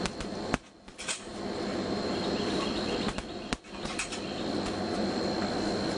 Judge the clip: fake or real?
real